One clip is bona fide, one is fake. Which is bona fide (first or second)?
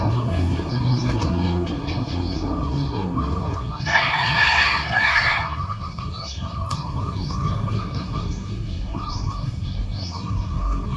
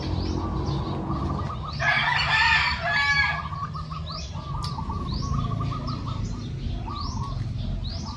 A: second